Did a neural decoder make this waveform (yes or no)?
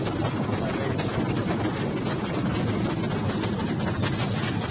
no